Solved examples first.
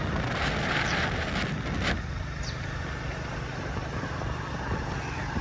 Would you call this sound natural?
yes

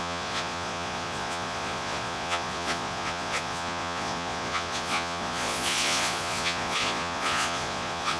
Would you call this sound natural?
no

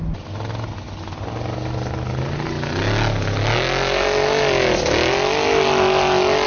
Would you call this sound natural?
yes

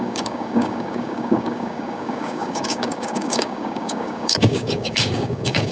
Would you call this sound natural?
no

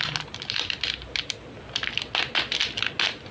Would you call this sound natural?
yes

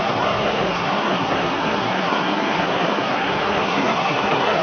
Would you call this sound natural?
no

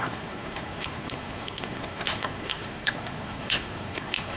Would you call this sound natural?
no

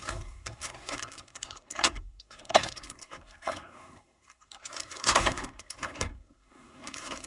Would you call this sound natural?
no